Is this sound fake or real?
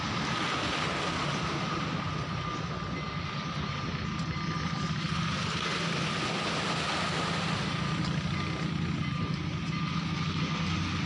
real